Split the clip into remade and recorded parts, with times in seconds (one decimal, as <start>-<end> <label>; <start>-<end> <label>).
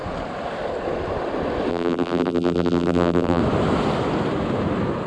0.0-1.7 recorded; 1.7-3.4 remade; 3.4-5.1 recorded